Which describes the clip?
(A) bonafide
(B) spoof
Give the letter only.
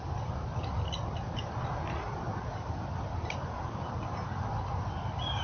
A